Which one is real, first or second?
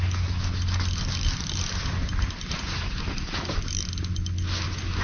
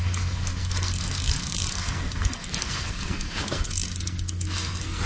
first